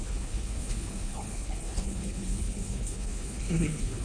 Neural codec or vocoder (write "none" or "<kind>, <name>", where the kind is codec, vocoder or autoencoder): codec, HILCodec